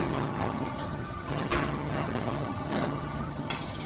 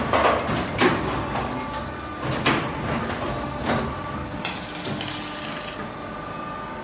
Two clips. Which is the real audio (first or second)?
second